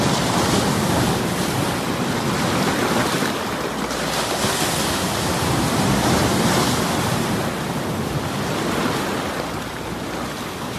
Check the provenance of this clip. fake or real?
real